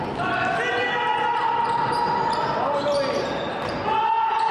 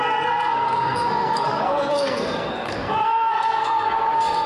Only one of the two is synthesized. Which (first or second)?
second